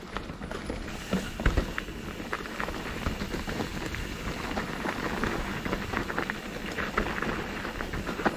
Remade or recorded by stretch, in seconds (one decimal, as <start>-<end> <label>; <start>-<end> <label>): 0.0-3.7 recorded; 3.7-4.4 remade; 4.4-8.4 recorded